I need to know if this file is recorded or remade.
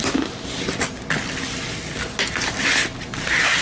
recorded